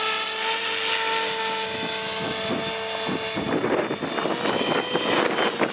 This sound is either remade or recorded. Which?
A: recorded